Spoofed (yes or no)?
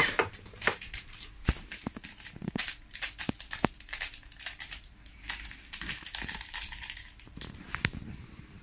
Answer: yes